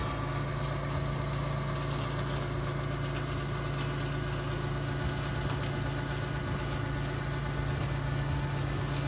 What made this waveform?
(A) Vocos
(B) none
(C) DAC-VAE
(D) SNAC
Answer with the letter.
B